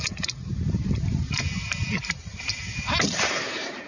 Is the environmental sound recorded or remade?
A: remade